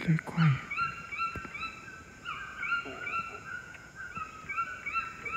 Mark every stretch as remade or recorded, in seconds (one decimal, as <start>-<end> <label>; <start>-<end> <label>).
0.0-0.7 remade; 0.7-2.0 recorded; 2.0-4.1 remade; 4.1-5.4 recorded